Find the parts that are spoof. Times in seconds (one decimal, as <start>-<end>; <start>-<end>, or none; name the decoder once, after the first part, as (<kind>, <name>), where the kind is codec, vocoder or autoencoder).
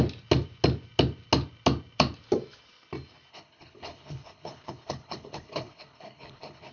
3.3-6.7 (codec, HILCodec)